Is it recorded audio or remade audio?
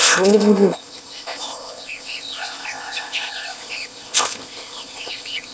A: remade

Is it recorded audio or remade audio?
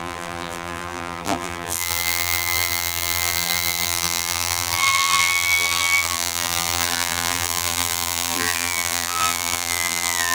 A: remade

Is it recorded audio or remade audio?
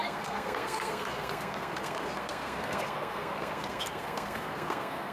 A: remade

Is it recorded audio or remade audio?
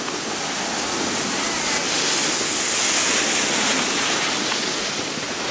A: recorded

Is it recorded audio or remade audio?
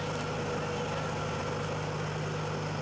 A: recorded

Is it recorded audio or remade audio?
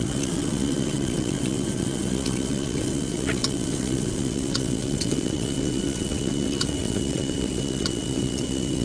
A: remade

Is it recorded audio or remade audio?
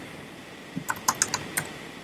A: recorded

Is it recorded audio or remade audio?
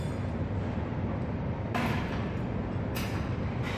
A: recorded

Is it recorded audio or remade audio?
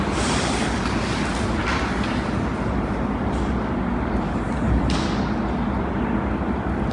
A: recorded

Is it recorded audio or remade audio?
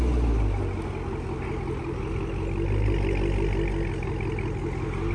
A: recorded